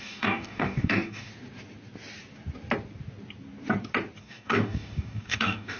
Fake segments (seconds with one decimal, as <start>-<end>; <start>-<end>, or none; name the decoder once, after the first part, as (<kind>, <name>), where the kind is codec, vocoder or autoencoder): 0.0-1.3 (codec, DAC); 4.2-5.8